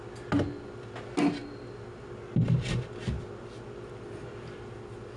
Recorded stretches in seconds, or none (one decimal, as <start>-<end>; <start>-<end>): 0.0-5.2